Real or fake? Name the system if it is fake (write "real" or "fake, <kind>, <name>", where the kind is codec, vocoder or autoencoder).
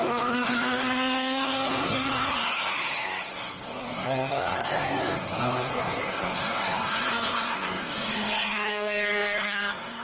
fake, codec, SNAC